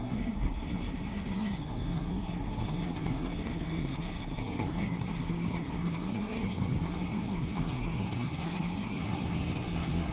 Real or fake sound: fake